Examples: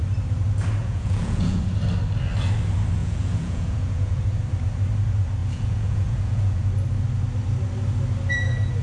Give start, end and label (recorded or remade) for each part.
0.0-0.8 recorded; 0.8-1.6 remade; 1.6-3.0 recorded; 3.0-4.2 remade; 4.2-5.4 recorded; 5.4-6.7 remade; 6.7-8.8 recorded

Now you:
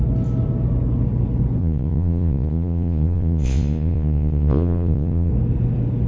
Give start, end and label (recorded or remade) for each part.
0.0-1.6 recorded; 1.6-5.3 remade; 5.3-6.1 recorded

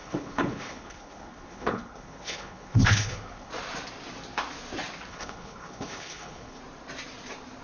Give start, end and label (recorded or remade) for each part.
0.0-3.5 remade; 3.5-5.1 recorded; 5.1-6.6 remade; 6.6-7.6 recorded

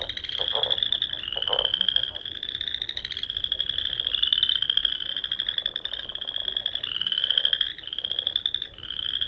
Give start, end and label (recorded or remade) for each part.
0.0-9.3 recorded